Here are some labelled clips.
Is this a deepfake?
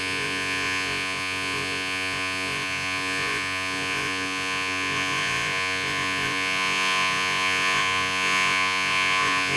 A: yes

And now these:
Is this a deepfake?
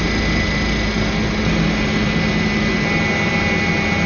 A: no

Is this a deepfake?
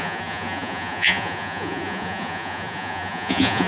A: yes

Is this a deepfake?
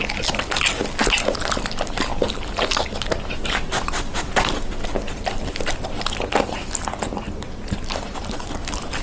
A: no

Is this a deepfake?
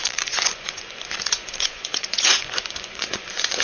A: yes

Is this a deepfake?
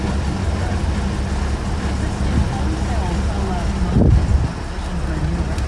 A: no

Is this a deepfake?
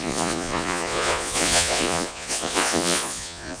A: yes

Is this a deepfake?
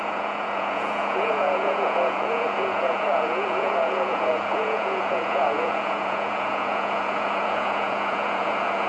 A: yes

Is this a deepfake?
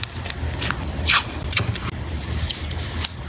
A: no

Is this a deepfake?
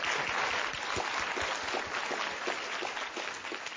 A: no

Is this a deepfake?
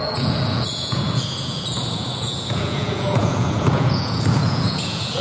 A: yes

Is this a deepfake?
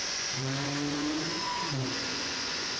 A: yes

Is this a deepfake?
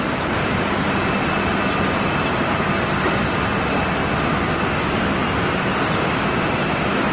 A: no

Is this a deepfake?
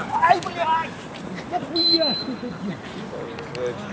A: no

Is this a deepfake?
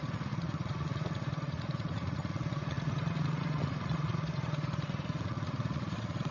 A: yes